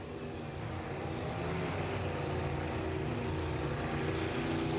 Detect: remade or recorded recorded